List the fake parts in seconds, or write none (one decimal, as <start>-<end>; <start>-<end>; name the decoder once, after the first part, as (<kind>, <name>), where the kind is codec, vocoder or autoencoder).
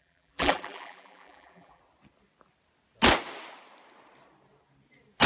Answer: 0.0-1.8 (vocoder, BigVGAN v2)